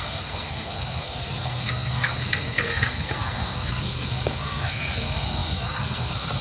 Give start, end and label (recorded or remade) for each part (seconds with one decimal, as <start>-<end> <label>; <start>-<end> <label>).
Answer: 0.0-6.4 remade